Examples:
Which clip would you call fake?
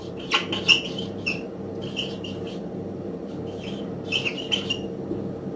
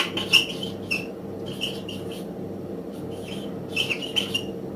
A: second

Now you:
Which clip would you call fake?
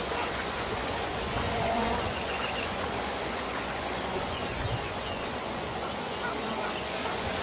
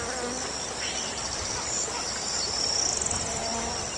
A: first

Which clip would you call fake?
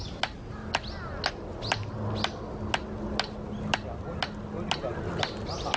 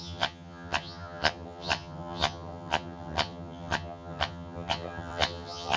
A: second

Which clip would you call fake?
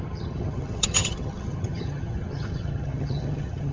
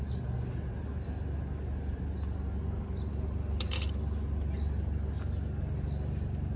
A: first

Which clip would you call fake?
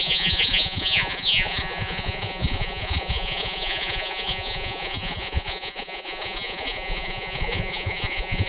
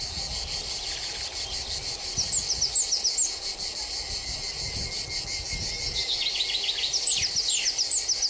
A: first